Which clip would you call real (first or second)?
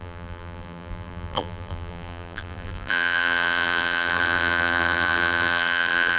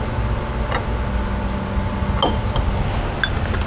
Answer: second